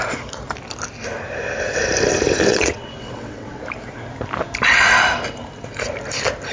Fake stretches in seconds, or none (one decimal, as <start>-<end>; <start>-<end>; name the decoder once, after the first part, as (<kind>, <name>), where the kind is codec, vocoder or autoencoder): 2.5-3.6 (vocoder, WaveNeXt)